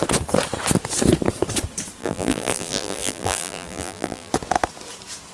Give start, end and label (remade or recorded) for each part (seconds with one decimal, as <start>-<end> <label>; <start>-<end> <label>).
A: 0.0-2.0 recorded; 2.0-4.3 remade; 4.3-5.3 recorded

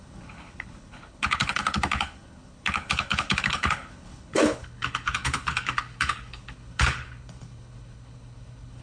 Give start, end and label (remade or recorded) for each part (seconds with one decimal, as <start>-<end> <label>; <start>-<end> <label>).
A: 0.0-8.8 remade

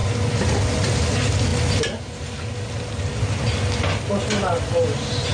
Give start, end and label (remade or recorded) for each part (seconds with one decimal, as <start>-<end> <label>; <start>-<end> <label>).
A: 0.0-5.3 recorded

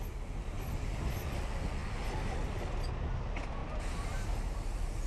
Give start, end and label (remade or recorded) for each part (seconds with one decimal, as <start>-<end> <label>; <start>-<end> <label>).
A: 0.0-3.6 recorded; 3.6-5.1 remade